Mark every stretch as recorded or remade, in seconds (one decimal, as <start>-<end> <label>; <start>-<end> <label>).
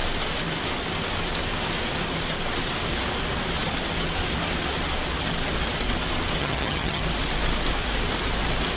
0.0-6.4 recorded; 6.4-7.0 remade; 7.0-8.8 recorded